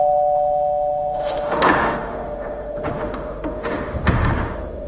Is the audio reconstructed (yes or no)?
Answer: yes